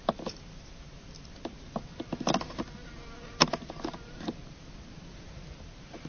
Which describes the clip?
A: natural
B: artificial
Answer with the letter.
A